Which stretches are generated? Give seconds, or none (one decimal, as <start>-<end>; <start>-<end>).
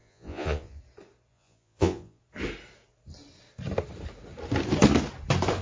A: 0.0-0.8; 1.3-2.2